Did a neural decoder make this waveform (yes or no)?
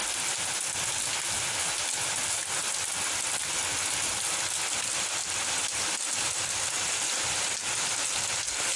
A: no